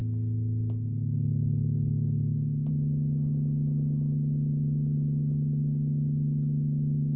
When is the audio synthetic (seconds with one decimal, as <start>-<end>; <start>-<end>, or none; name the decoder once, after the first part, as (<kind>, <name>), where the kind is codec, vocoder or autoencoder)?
none